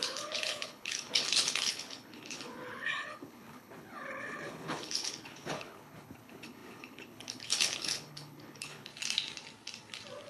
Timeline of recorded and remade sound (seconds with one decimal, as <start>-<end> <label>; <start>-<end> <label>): 0.0-8.9 remade; 8.9-10.3 recorded